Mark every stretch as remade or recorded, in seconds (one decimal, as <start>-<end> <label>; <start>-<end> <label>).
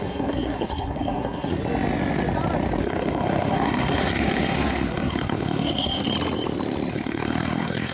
0.0-1.6 remade; 1.6-2.8 recorded; 2.8-6.1 remade; 6.1-6.9 recorded; 6.9-7.9 remade